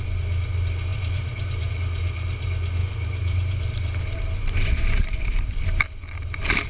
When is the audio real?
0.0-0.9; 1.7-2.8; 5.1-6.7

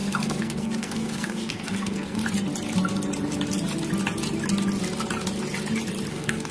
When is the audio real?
2.2-6.1

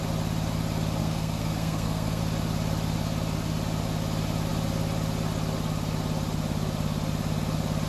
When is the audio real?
0.0-1.0; 2.2-7.9

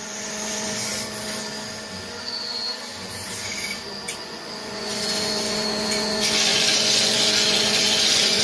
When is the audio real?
0.9-4.2

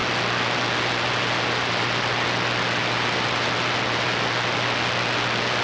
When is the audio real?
0.0-5.6

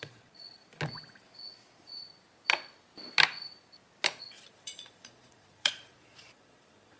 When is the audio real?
0.6-4.2

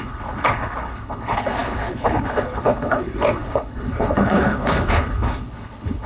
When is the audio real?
none

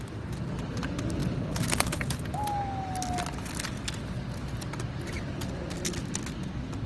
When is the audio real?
0.0-6.9